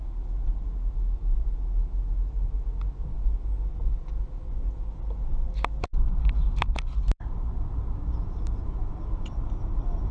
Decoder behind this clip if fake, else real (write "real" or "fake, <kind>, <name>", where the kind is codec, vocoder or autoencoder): real